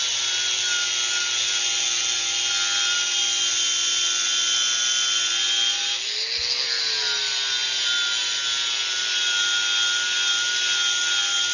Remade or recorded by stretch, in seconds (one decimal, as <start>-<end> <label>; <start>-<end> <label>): 0.0-11.5 recorded